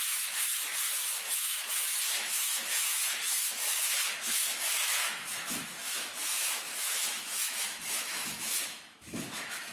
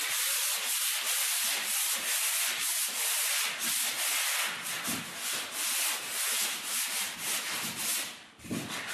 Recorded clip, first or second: second